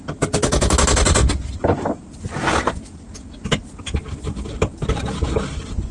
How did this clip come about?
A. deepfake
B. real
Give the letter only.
B